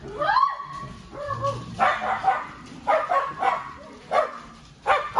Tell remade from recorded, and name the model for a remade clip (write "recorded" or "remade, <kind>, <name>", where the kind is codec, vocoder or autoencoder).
recorded